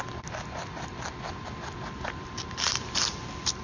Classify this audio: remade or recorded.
remade